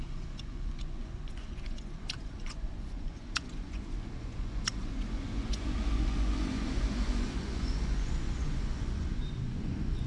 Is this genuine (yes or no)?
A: no